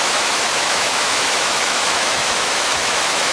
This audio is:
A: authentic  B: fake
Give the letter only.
B